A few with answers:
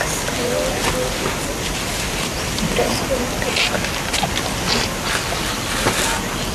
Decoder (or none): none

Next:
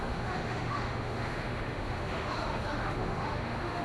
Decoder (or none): autoencoder, DAC-VAE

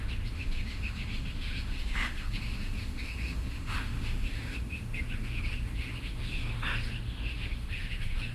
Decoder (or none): autoencoder, DAC-VAE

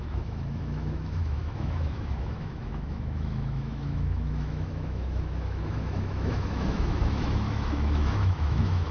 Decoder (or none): autoencoder, DAC-VAE